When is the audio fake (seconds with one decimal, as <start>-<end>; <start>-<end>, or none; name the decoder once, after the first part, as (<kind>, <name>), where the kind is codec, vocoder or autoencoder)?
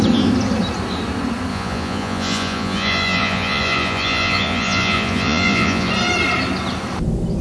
1.5-5.9 (vocoder, Vocos)